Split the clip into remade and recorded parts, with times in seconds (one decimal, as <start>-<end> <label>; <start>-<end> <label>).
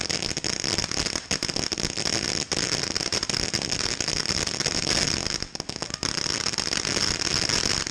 0.0-5.2 remade; 5.2-5.8 recorded; 5.8-7.9 remade